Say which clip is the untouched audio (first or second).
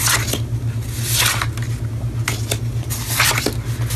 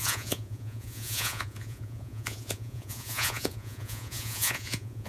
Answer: first